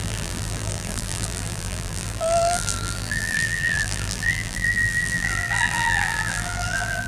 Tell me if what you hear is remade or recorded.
remade